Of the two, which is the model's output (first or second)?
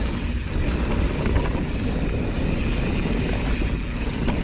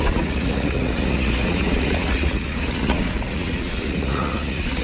second